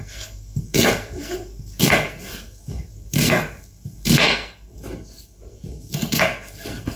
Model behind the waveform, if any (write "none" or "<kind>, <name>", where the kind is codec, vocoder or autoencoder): codec, SNAC